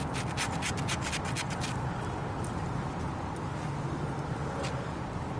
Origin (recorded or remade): recorded